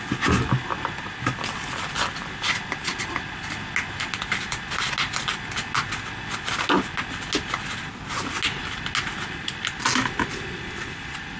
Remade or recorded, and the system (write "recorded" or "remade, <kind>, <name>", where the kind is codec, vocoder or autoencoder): recorded